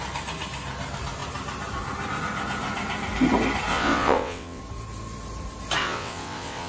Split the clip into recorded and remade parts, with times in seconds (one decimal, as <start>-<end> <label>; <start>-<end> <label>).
0.0-3.7 recorded; 3.7-4.6 remade; 4.6-5.8 recorded; 5.8-6.7 remade